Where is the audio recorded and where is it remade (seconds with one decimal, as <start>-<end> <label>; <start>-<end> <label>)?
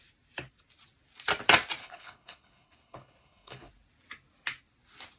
0.0-1.8 recorded; 1.8-3.7 remade; 3.7-5.2 recorded